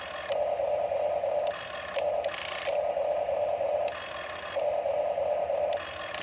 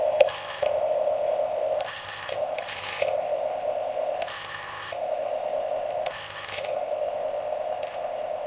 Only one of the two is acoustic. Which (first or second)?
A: first